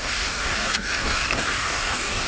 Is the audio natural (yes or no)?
no